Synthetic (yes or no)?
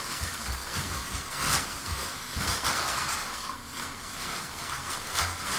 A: yes